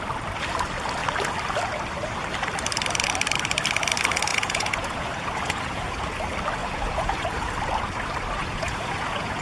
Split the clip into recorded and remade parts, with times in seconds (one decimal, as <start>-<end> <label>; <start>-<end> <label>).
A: 0.0-4.3 recorded; 4.3-6.0 remade; 6.0-6.6 recorded; 6.6-7.5 remade; 7.5-8.4 recorded; 8.4-9.4 remade